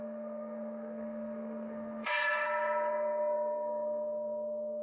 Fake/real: fake